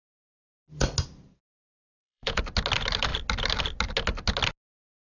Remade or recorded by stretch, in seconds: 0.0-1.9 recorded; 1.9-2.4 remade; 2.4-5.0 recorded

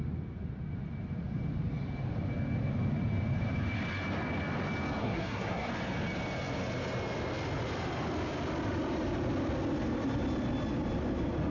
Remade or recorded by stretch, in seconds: 0.0-5.0 recorded; 5.0-5.7 remade; 5.7-11.5 recorded

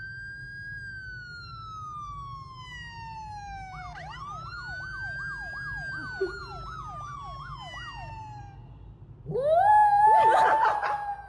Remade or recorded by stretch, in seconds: 0.0-11.3 recorded

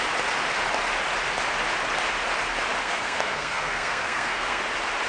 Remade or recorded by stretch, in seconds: 0.0-2.8 recorded; 2.8-4.6 remade; 4.6-5.1 recorded

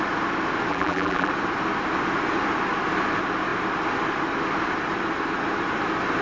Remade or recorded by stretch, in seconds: 0.0-0.7 recorded; 0.7-1.3 remade; 1.3-6.2 recorded

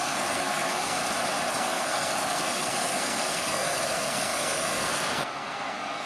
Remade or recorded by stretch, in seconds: 0.0-1.0 remade; 1.0-1.5 recorded; 1.5-6.1 remade